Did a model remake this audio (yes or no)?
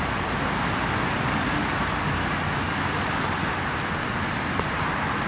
no